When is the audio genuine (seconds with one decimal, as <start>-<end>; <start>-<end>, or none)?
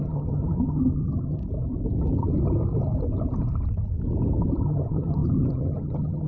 1.4-4.6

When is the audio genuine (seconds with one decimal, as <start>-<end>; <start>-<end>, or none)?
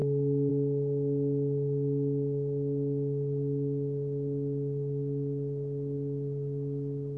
0.0-7.2